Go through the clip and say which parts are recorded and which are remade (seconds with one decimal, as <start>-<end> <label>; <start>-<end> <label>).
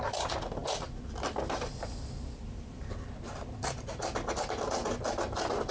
0.0-0.6 recorded; 0.6-4.0 remade; 4.0-5.7 recorded